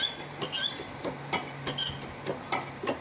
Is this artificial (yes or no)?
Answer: no